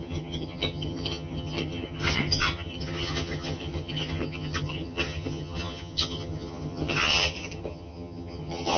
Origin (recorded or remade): remade